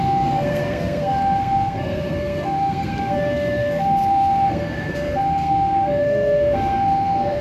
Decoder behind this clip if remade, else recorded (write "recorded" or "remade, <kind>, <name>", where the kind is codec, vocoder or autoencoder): remade, codec, SNAC